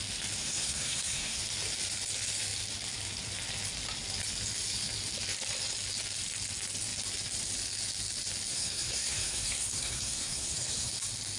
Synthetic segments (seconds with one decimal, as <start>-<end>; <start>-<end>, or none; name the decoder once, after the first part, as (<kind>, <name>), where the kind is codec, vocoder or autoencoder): 0.4-1.4 (codec, SNAC); 8.5-10.9

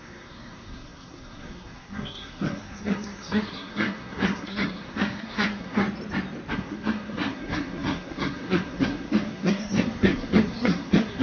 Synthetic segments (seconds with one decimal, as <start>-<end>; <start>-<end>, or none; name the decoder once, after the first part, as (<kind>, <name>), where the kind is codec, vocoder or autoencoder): 0.0-5.8 (codec, SNAC); 6.5-11.2